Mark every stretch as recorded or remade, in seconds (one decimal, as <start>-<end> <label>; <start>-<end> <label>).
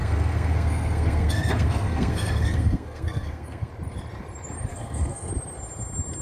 0.0-3.7 remade; 3.7-4.7 recorded; 4.7-5.3 remade; 5.3-6.2 recorded